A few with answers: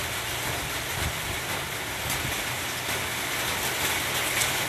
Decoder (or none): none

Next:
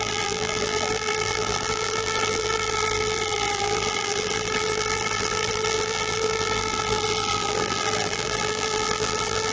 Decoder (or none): vocoder, BigVGAN v2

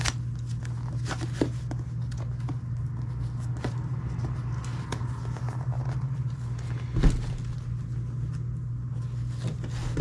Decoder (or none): none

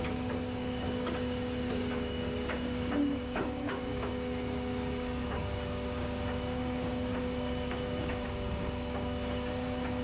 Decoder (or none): codec, DAC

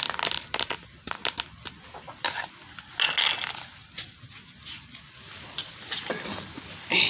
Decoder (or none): none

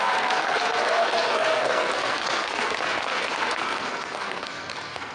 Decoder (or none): codec, SNAC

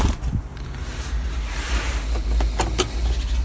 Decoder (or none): none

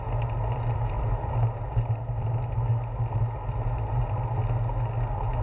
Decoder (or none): none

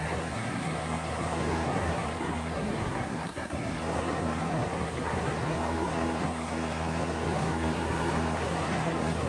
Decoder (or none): codec, SNAC